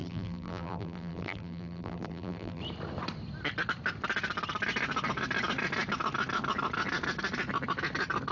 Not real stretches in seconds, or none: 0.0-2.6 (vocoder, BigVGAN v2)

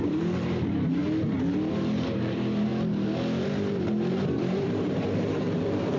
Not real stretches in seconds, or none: 0.0-1.0 (vocoder, BigVGAN v2); 1.7-2.7; 4.1-6.0

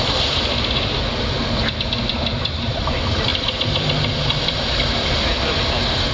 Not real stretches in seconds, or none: 2.3-2.8 (vocoder, BigVGAN v2); 3.3-5.0

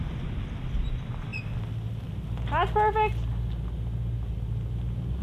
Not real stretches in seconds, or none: none